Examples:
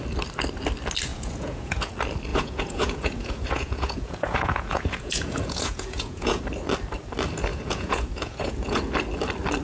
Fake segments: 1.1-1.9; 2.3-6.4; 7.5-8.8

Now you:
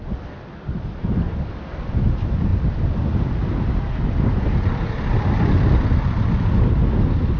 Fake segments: none